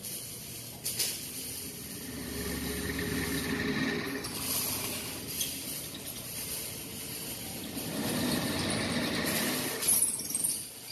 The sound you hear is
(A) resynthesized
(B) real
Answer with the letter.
B